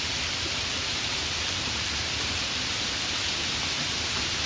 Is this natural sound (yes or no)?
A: no